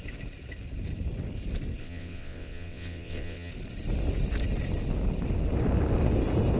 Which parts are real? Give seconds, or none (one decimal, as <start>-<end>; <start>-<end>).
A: 0.0-1.8; 3.5-6.6

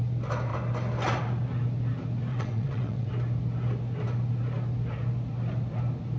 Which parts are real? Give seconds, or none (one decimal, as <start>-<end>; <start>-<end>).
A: 0.0-2.3; 3.1-6.2

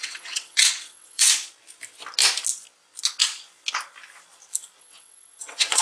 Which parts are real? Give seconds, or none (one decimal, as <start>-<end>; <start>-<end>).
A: 1.3-4.8

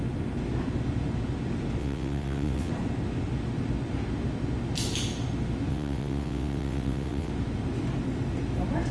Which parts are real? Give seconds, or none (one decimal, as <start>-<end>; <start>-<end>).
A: 0.0-1.8; 2.7-5.7; 7.3-8.9

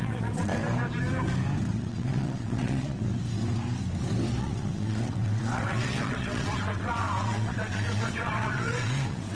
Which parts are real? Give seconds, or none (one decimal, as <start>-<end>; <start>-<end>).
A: 0.5-1.7; 3.1-4.4

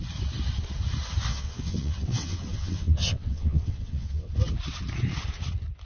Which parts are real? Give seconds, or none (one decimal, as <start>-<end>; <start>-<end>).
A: 0.0-1.3; 4.3-5.8

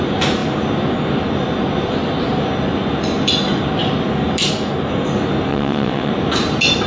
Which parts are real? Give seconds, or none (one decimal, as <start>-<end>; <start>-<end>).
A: 0.0-5.5; 6.1-6.9

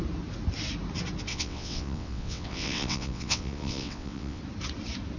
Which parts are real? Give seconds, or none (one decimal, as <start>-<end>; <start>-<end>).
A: 0.0-1.3; 4.4-5.2